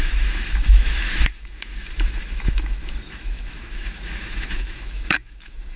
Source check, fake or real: fake